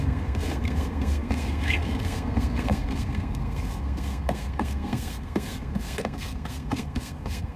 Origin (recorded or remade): remade